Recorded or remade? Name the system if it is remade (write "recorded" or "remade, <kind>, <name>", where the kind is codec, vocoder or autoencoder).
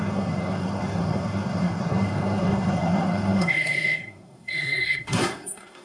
remade, codec, SNAC